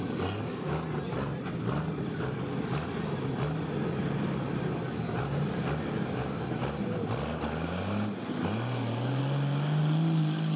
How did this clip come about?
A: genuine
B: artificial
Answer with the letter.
A